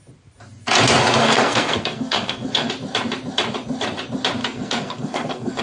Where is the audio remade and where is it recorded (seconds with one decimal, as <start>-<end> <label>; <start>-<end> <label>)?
0.0-1.2 recorded; 1.2-2.7 remade; 2.7-4.4 recorded; 4.4-5.6 remade